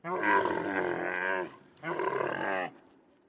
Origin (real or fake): real